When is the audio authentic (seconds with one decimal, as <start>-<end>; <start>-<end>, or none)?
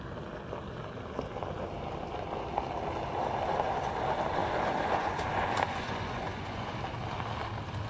0.0-4.4; 6.8-7.9